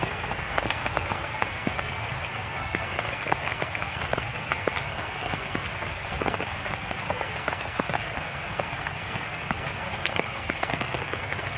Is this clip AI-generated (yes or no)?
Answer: yes